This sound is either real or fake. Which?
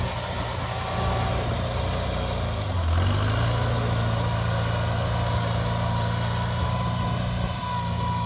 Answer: real